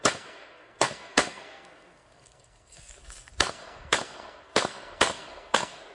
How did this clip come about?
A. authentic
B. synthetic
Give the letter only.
B